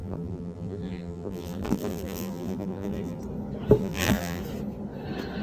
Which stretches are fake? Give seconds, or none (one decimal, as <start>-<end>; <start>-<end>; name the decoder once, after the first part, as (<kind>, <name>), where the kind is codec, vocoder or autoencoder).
0.0-3.2 (vocoder, BigVGAN v2); 3.8-4.4